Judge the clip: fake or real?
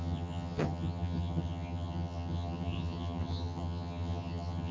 fake